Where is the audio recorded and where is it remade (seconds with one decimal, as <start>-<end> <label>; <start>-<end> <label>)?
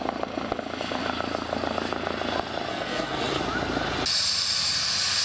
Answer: 0.0-2.7 recorded; 2.7-3.4 remade; 3.4-5.2 recorded